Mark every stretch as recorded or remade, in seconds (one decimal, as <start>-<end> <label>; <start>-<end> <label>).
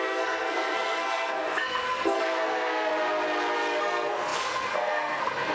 0.0-2.9 remade; 2.9-3.8 recorded; 3.8-5.5 remade